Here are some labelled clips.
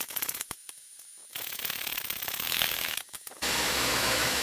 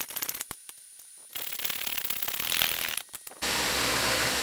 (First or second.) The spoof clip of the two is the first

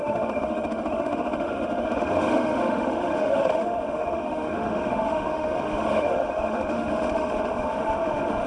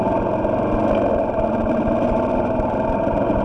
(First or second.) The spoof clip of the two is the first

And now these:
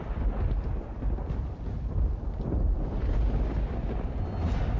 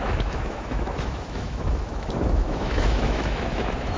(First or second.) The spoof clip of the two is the second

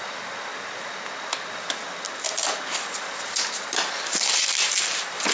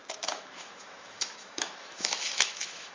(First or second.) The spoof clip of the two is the second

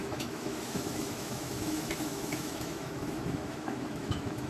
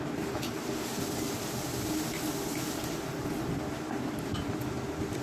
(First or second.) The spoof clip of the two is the first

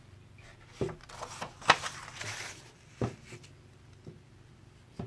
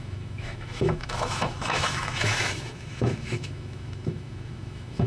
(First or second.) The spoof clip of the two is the second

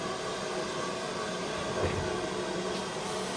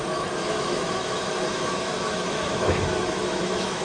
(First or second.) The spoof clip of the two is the second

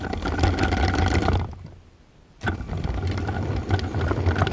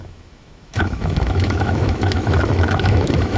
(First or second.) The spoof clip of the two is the second